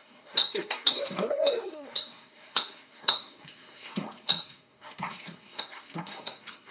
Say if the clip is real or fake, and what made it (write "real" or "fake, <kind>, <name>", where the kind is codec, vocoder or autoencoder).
fake, codec, SNAC